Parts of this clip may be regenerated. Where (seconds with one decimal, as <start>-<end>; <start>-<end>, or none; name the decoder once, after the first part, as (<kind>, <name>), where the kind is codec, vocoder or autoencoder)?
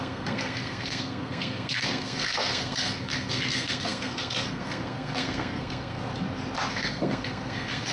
0.0-6.1 (codec, SNAC); 6.7-7.9